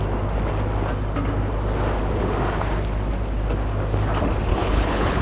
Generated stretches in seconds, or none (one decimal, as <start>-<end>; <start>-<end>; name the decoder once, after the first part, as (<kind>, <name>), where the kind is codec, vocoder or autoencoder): 4.5-5.2 (codec, HILCodec)